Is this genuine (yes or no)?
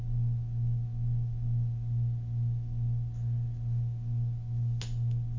yes